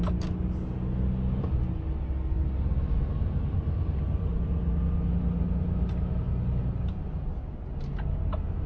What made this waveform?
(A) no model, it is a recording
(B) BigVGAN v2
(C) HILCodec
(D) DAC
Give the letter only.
A